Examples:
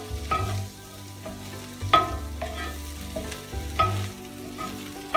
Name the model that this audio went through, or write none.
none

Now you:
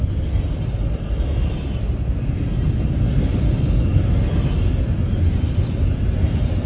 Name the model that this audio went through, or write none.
none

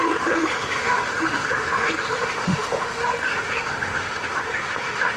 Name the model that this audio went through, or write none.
autoencoder, DAC-VAE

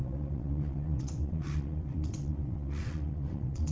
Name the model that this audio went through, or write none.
vocoder, WaveNeXt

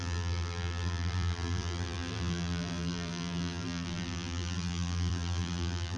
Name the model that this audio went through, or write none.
vocoder, BigVGAN v2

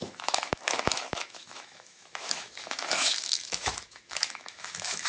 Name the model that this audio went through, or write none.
autoencoder, DAC-VAE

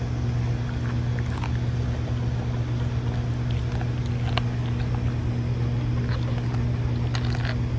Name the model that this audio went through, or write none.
none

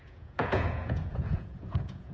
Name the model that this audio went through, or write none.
vocoder, Vocos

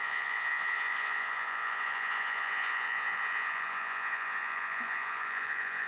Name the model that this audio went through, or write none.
vocoder, Vocos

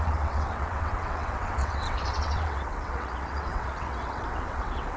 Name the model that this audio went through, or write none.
vocoder, WaveNeXt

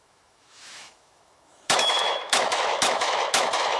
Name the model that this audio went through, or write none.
autoencoder, DAC-VAE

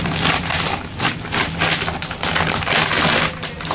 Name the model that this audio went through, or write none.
none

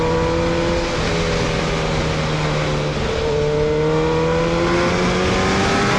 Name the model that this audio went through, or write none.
none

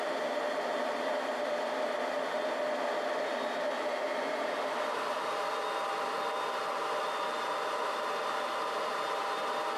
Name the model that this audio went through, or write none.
none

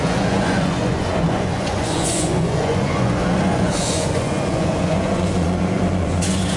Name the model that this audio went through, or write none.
vocoder, Vocos